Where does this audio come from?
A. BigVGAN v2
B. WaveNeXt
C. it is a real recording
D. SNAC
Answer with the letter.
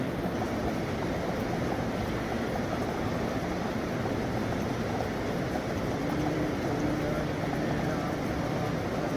A